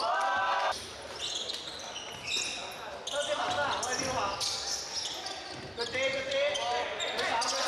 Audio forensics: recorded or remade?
recorded